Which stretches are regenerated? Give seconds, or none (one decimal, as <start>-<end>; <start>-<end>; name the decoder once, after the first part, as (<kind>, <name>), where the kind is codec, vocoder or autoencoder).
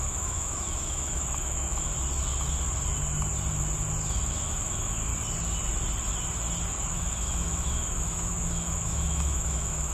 0.0-1.9 (autoencoder, DAC-VAE); 4.3-5.1; 6.9-9.9